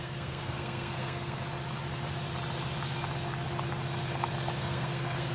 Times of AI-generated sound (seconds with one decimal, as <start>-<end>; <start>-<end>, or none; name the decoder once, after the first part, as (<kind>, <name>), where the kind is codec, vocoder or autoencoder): 0.0-1.4 (codec, SNAC); 4.6-5.3